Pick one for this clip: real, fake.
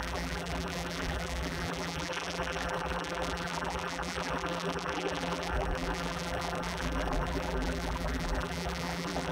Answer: fake